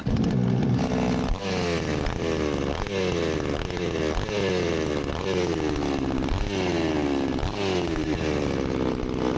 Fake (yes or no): no